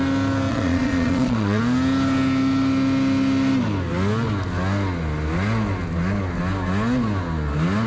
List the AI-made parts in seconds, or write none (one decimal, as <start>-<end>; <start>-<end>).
0.5-1.6